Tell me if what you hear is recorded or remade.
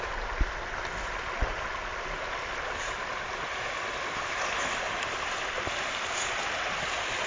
recorded